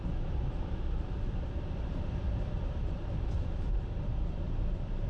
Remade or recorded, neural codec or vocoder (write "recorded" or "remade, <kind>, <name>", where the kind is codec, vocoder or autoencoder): remade, vocoder, BigVGAN v2